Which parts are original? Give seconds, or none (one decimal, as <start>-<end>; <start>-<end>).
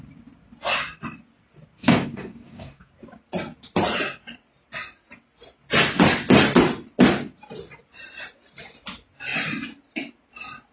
0.0-1.8; 2.9-10.7